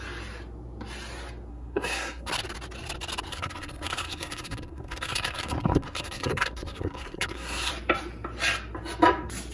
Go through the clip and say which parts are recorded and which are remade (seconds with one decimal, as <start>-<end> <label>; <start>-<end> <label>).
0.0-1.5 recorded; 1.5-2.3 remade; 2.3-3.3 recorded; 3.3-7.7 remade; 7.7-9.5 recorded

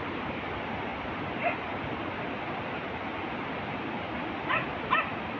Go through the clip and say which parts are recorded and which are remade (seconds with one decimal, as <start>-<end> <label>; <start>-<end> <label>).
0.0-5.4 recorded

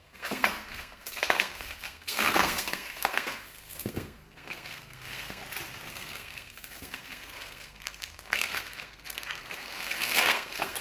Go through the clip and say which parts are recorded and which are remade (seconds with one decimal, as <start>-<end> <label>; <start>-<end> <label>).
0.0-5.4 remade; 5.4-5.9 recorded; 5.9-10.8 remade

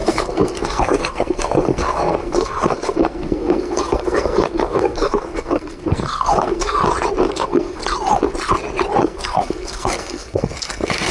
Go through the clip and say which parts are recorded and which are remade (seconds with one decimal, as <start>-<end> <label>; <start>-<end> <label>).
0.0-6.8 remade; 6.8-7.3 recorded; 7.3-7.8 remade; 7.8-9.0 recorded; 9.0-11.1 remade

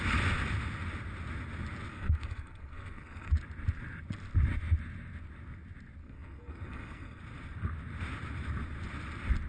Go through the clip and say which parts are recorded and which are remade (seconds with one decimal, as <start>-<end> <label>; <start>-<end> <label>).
0.0-1.9 recorded; 1.9-3.3 remade; 3.3-6.0 recorded; 6.0-7.2 remade; 7.2-9.5 recorded

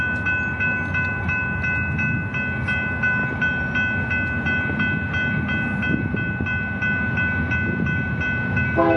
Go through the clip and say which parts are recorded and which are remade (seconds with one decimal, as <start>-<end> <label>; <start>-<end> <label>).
0.0-9.0 recorded